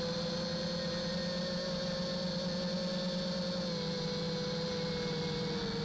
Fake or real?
real